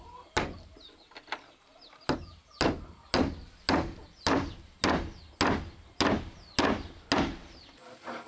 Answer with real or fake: real